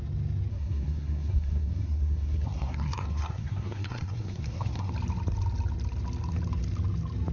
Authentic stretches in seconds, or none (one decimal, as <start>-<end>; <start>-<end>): 0.0-0.5; 4.9-7.3